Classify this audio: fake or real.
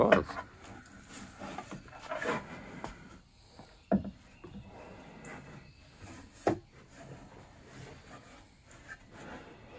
real